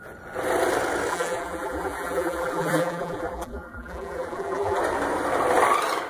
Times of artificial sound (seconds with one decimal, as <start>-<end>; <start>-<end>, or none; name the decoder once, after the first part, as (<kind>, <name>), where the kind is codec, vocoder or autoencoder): 1.1-4.8 (vocoder, BigVGAN v2)